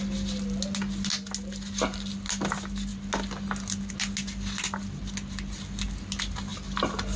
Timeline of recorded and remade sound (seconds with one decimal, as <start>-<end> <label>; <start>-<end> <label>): 0.0-7.2 recorded